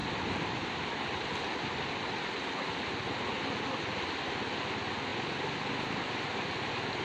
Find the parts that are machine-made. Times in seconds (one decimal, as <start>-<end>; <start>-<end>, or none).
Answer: none